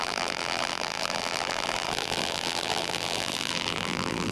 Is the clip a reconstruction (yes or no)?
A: yes